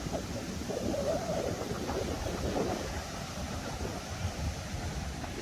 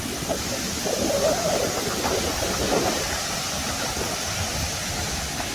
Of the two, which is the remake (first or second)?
first